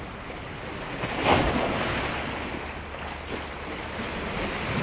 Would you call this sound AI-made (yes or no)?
no